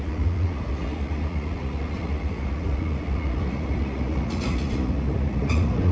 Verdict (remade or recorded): remade